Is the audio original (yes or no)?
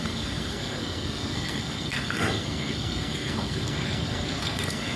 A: no